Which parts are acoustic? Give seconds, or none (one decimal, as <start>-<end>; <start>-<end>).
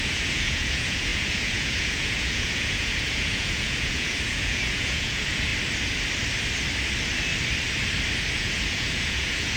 5.5-8.3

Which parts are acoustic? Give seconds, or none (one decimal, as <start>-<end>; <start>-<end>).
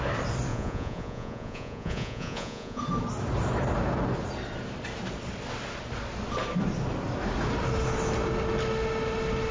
0.0-0.5; 2.8-9.5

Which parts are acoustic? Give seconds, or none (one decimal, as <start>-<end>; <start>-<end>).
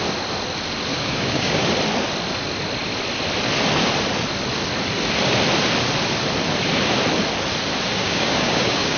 0.0-0.9; 1.7-8.0